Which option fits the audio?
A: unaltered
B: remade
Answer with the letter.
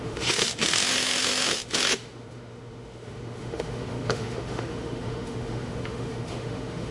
B